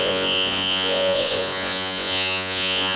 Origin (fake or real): fake